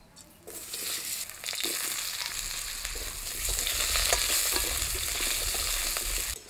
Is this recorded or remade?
recorded